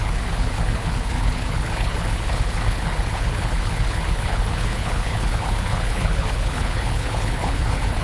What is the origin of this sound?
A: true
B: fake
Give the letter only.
B